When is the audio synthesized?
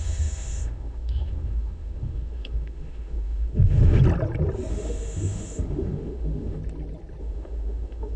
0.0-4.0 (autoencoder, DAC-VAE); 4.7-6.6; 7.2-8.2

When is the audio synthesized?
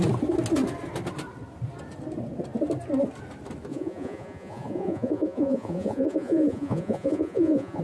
3.7-7.8 (vocoder, Vocos)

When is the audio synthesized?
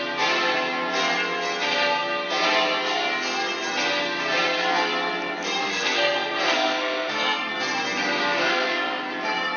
5.6-7.5 (codec, SNAC); 8.5-9.1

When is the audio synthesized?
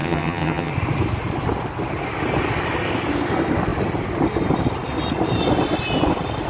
0.0-0.7 (vocoder, HiFi-GAN)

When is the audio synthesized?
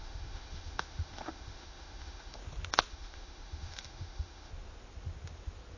0.0-2.4 (autoencoder, DAC-VAE); 2.9-4.5